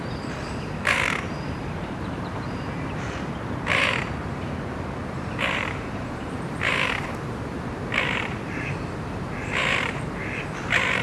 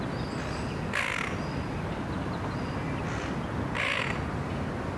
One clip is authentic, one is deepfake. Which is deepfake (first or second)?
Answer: first